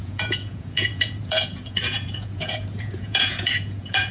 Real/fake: fake